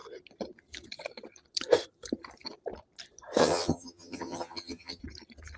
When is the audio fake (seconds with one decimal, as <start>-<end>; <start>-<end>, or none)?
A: 3.4-5.0